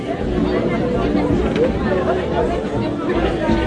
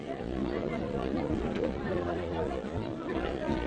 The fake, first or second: second